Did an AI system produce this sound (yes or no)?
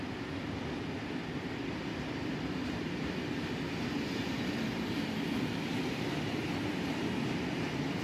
yes